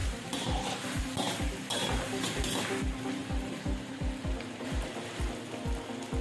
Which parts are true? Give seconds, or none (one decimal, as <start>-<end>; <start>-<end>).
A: 1.0-1.8; 2.4-3.2; 5.2-6.2